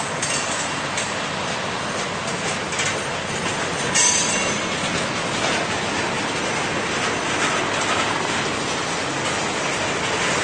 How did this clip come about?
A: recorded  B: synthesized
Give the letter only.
A